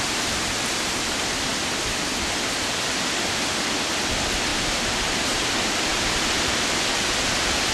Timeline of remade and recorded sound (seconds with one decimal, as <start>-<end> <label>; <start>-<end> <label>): 0.0-4.5 recorded; 4.5-5.5 remade; 5.5-7.7 recorded